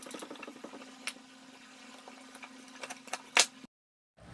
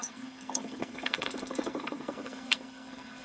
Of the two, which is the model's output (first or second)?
second